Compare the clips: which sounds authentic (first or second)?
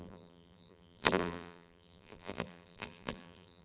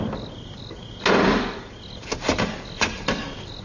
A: second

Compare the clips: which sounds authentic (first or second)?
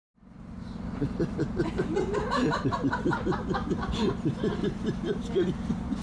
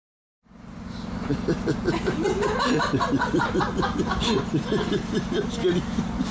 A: second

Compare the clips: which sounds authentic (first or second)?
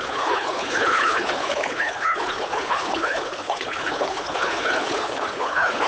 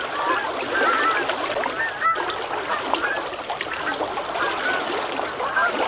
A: second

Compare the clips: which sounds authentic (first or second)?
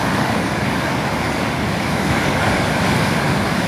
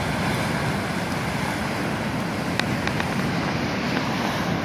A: second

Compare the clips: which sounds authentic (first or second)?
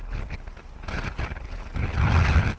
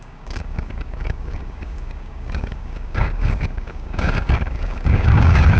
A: first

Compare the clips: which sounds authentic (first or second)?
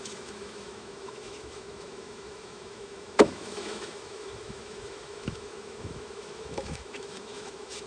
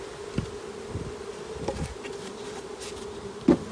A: second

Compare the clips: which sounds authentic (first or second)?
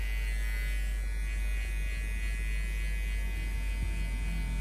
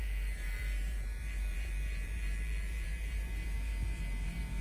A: first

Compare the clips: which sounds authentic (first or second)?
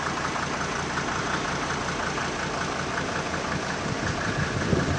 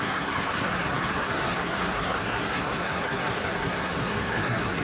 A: first